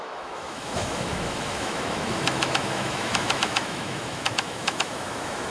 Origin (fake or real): fake